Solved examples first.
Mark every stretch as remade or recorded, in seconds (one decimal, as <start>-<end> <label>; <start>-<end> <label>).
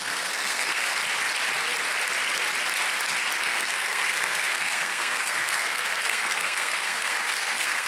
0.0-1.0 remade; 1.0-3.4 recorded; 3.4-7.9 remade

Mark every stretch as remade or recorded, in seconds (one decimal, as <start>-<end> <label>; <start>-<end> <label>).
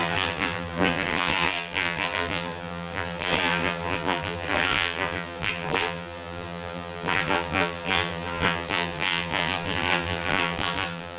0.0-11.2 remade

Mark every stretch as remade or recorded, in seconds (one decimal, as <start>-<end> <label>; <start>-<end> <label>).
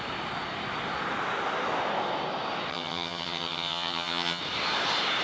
0.0-2.7 recorded; 2.7-4.4 remade; 4.4-5.2 recorded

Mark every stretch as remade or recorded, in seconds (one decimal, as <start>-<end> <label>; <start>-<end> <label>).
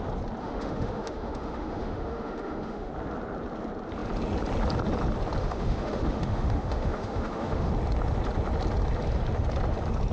0.0-0.4 recorded; 0.4-2.9 remade; 2.9-5.4 recorded; 5.4-7.7 remade; 7.7-10.1 recorded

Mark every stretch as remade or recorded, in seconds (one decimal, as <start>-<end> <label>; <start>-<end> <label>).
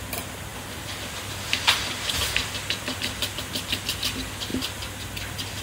0.0-0.5 remade; 0.5-3.9 recorded; 3.9-4.5 remade; 4.5-5.6 recorded